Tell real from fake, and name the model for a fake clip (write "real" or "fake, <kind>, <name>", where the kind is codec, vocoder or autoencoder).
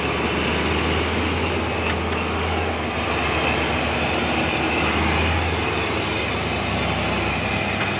real